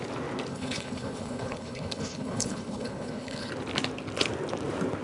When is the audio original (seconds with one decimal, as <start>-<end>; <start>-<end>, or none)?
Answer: 0.0-0.5; 3.5-5.0